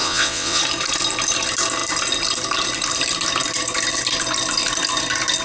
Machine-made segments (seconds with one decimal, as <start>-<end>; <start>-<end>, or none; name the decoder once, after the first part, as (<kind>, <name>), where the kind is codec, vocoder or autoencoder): 0.0-0.6 (vocoder, WaveNeXt)